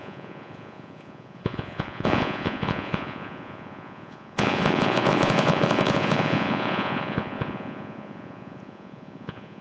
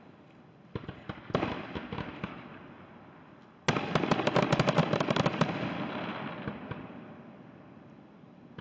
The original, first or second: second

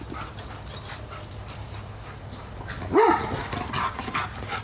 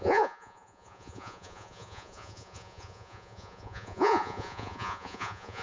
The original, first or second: first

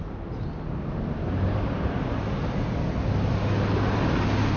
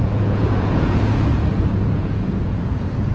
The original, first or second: first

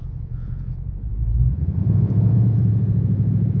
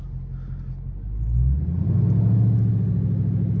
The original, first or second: second